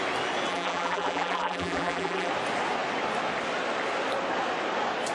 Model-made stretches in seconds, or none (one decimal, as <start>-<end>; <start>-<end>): 0.5-2.3